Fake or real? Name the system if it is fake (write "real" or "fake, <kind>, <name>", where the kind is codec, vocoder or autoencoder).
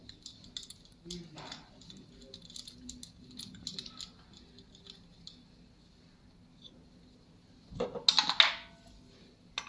real